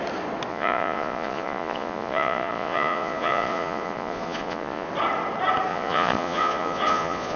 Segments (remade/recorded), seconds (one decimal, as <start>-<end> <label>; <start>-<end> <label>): 0.0-0.5 recorded; 0.5-4.9 remade; 4.9-5.7 recorded; 5.7-7.4 remade